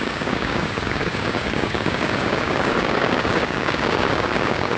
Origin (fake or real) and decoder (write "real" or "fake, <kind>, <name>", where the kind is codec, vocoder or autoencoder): fake, codec, DAC